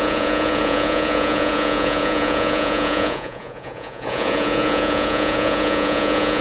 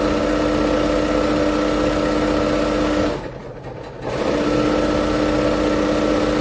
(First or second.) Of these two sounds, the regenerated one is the first